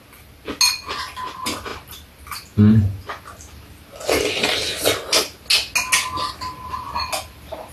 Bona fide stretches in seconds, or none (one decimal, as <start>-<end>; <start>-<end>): 0.0-7.7